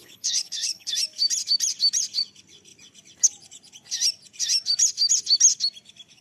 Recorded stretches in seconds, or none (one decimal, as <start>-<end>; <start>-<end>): 0.9-6.2